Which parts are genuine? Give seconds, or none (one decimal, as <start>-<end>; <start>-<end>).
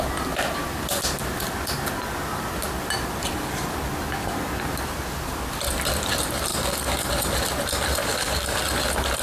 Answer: 0.0-6.5; 7.1-8.0; 8.6-9.2